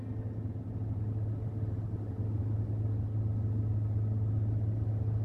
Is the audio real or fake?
real